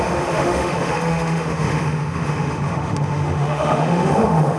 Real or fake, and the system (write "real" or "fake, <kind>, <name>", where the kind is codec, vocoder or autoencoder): fake, autoencoder, DAC-VAE